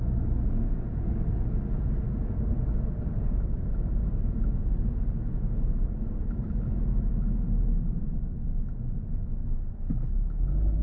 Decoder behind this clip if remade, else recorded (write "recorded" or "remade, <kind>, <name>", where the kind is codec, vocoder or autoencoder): recorded